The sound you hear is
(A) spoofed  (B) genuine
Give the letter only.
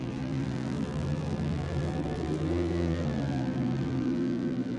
A